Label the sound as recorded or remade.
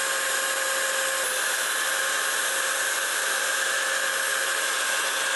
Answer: recorded